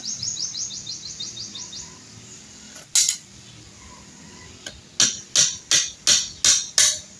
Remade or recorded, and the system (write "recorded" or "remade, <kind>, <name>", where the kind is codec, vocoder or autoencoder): recorded